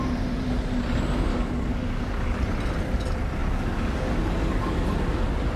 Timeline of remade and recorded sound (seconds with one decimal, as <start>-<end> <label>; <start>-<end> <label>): 0.0-1.3 recorded; 1.3-2.4 remade; 2.4-3.4 recorded; 3.4-4.9 remade; 4.9-5.6 recorded